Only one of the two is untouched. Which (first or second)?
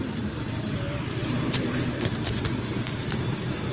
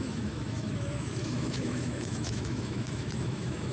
first